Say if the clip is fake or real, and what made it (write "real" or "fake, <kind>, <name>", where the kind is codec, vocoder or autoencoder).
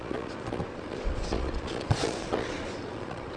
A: fake, vocoder, Vocos